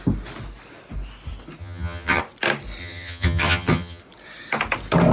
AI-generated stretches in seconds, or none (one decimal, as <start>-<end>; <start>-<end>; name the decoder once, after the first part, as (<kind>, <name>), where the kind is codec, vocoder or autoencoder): 1.6-2.2 (vocoder, HiFi-GAN); 2.8-4.0